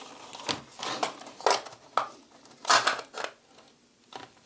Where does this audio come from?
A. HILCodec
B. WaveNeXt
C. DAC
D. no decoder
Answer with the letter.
D